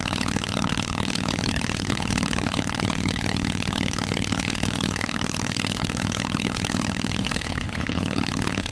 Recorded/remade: remade